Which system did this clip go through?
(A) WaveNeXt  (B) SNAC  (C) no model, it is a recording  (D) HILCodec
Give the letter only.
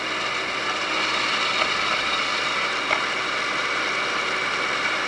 C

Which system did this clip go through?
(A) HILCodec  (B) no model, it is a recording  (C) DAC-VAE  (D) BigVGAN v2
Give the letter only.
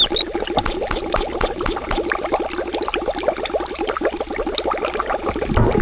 B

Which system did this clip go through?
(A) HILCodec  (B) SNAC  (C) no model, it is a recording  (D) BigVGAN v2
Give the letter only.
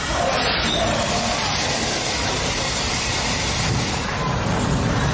D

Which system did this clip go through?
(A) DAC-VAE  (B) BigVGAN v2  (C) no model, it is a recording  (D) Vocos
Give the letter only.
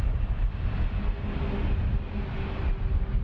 C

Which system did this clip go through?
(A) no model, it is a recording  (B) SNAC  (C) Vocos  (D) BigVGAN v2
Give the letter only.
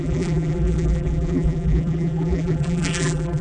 D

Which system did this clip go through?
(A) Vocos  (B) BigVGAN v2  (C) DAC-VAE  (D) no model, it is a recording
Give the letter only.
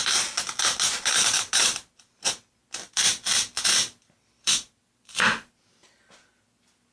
D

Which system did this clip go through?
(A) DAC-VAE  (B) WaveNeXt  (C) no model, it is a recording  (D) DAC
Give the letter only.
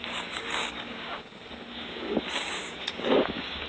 D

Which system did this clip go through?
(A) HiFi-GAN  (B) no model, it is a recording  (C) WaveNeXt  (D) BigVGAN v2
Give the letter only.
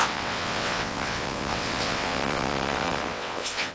C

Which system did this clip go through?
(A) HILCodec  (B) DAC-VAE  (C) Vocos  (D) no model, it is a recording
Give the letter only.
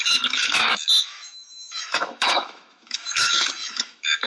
B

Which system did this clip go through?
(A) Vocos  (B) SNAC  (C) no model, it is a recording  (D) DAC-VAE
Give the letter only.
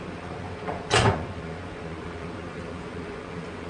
A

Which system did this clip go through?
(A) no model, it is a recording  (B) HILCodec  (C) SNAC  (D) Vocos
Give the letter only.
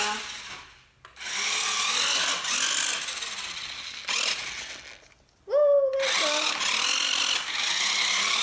A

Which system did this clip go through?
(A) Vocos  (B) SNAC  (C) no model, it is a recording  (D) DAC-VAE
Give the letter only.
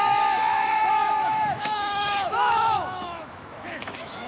D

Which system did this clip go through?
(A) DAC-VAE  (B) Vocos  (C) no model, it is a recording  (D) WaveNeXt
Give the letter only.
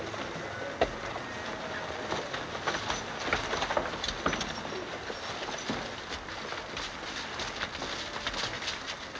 C